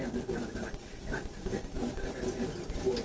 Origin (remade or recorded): recorded